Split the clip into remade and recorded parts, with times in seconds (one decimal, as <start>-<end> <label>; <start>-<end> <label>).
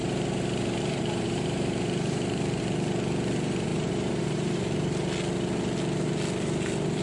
0.0-2.6 remade; 2.6-3.7 recorded; 3.7-4.9 remade; 4.9-7.0 recorded